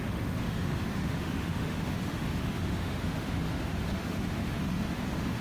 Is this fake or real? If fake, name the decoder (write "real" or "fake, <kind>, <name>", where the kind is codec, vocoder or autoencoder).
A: fake, autoencoder, DAC-VAE